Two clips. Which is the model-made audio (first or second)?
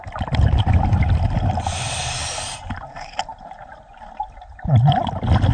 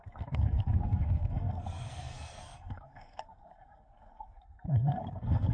second